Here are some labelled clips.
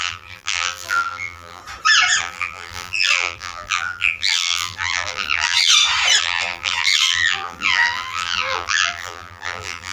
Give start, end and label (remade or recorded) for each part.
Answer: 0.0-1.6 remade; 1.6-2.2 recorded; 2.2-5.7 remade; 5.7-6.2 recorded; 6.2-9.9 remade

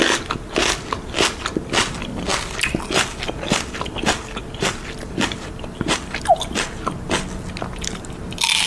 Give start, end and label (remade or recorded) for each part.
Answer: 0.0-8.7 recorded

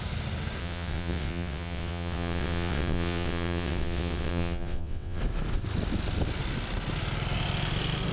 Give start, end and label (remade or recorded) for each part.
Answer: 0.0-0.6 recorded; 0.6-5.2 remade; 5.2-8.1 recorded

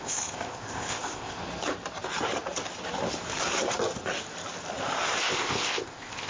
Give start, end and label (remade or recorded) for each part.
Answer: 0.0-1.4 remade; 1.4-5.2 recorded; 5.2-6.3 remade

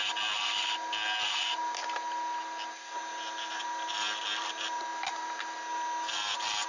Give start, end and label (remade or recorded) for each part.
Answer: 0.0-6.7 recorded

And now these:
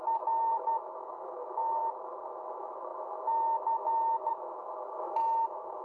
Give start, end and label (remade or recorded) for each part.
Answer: 0.0-1.8 remade; 1.8-2.5 recorded; 2.5-5.8 remade

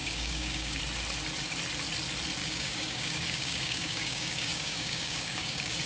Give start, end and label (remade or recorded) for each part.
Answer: 0.0-0.8 remade; 0.8-2.4 recorded; 2.4-5.9 remade